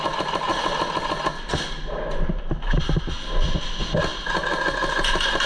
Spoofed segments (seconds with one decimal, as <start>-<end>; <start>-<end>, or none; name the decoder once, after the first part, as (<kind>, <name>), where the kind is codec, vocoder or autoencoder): none